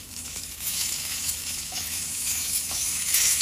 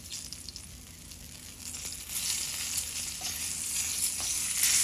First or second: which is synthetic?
first